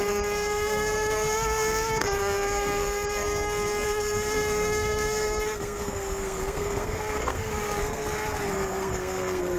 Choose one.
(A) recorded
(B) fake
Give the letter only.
B